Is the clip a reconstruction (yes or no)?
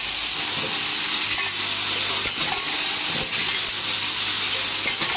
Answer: no